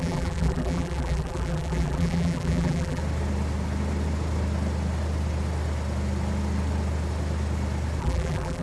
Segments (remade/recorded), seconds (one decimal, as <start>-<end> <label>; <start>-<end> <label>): 0.0-3.0 remade; 3.0-8.0 recorded; 8.0-8.6 remade